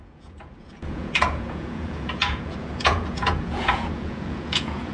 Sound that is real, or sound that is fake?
fake